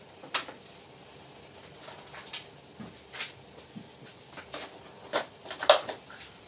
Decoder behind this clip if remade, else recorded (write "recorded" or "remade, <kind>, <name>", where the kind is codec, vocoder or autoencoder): recorded